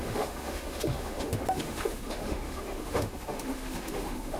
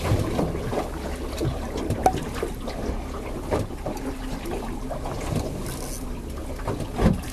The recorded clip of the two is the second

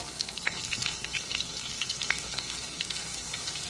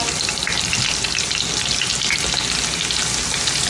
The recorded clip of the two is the second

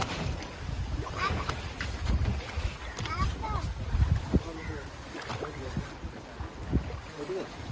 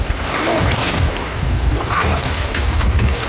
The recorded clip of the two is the first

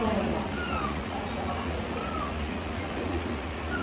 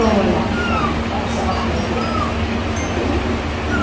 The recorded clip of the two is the second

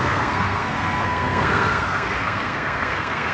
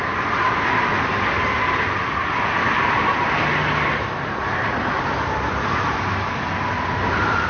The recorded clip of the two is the second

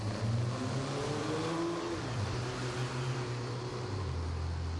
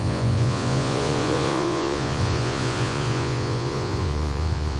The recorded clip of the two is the first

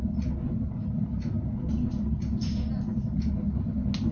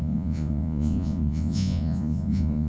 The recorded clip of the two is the first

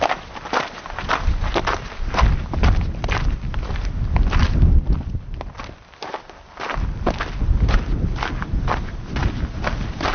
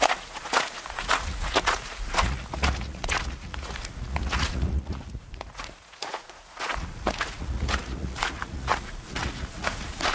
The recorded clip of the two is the first